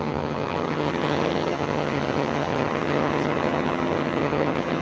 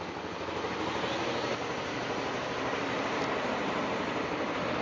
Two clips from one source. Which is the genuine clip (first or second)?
second